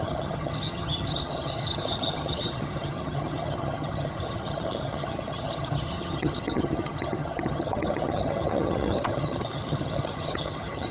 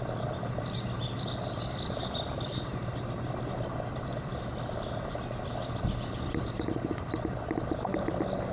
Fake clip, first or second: first